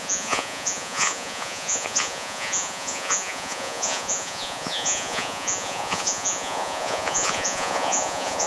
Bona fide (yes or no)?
no